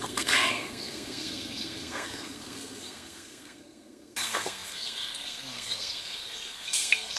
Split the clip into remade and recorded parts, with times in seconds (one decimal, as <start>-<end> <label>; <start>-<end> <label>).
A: 0.0-7.2 remade

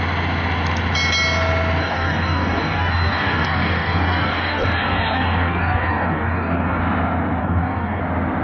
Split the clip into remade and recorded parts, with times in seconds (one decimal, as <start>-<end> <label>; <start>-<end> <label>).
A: 0.0-1.8 recorded; 1.8-6.8 remade; 6.8-7.4 recorded; 7.4-8.0 remade; 8.0-8.4 recorded

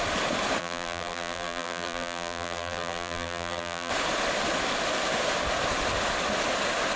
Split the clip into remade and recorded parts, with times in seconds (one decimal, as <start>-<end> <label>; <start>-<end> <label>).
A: 0.0-0.6 recorded; 0.6-3.9 remade; 3.9-7.0 recorded